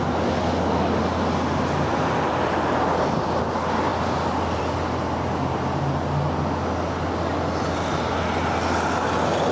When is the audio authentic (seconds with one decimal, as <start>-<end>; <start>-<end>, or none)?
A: 0.0-9.5